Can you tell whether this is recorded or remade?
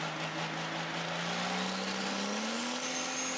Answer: recorded